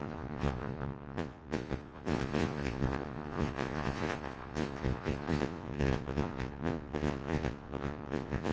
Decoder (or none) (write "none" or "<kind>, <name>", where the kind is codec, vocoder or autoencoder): vocoder, Vocos